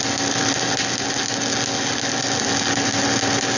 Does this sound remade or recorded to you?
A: recorded